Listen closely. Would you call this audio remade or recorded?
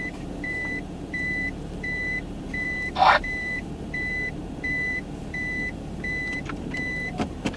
remade